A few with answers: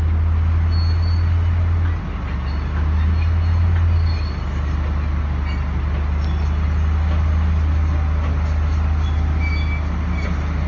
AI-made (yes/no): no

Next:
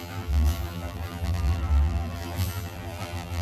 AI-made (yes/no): yes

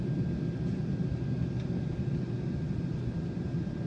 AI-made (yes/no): no